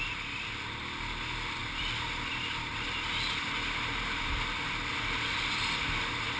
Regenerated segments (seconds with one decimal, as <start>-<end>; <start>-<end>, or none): none